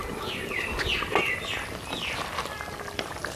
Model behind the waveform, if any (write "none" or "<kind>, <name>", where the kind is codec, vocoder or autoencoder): none